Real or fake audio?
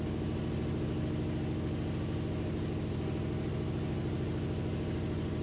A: real